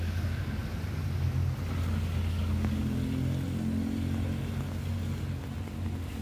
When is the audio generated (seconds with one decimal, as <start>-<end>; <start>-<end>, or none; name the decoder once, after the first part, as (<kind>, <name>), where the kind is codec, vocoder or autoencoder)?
0.0-0.6 (codec, DAC); 2.3-3.0